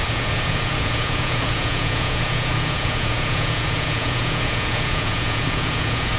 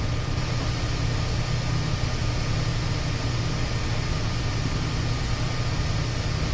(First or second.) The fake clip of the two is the first